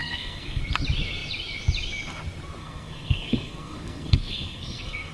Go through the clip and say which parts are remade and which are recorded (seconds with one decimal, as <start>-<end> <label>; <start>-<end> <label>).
0.0-0.6 remade; 0.6-2.6 recorded; 2.6-5.1 remade